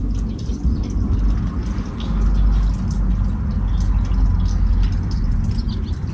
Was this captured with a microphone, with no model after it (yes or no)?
yes